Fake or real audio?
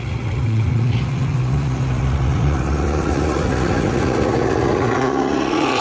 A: fake